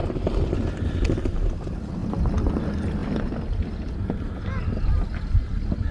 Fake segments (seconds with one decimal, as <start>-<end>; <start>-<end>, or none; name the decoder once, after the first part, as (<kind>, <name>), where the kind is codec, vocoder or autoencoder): none